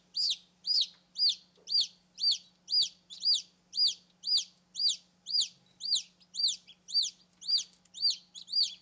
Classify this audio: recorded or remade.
recorded